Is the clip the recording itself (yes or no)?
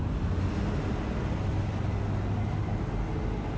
yes